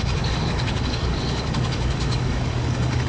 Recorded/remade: remade